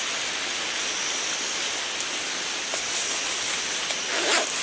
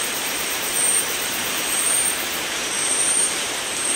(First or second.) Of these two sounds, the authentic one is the first